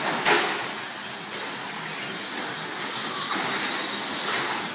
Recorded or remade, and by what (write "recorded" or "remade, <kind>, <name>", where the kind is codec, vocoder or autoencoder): recorded